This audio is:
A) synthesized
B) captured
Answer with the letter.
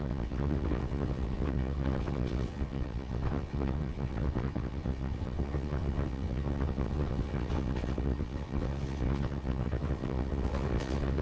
A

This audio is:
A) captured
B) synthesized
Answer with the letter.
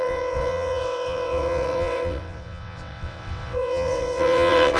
B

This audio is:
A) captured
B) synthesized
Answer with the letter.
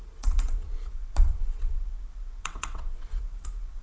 B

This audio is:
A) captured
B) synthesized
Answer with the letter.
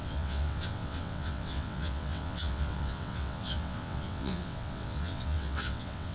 B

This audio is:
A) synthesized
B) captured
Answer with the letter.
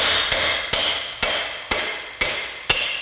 B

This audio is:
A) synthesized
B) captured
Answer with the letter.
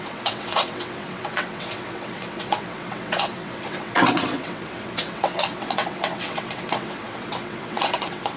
A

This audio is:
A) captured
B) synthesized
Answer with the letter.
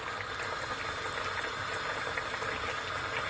A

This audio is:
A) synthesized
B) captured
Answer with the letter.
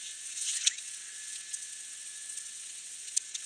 A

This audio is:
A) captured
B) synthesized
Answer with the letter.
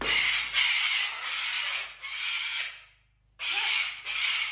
A